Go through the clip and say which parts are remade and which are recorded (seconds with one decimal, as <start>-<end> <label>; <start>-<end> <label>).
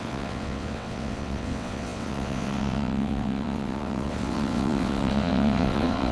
0.0-6.1 remade